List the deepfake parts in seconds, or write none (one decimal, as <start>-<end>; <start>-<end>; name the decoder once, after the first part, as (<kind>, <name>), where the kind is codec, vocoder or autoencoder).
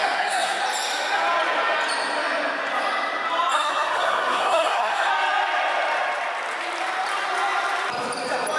0.0-0.6 (codec, SNAC); 3.5-5.1